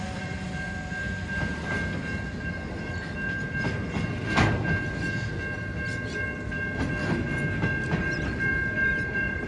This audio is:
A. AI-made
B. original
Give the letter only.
B